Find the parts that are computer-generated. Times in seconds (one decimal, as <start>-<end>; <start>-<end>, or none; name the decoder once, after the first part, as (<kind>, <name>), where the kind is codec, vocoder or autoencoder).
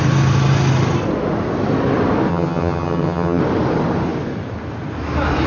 2.3-3.4 (vocoder, HiFi-GAN)